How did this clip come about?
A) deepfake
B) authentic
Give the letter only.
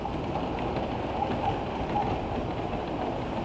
B